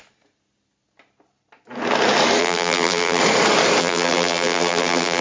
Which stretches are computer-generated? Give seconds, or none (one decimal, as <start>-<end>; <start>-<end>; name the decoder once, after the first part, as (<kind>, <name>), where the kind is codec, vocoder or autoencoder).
2.4-3.2 (vocoder, BigVGAN v2); 3.8-5.2